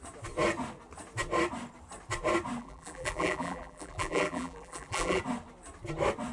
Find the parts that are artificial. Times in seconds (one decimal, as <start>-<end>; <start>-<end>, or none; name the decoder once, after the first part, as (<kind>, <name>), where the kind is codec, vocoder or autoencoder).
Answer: 2.6-5.2 (vocoder, BigVGAN v2)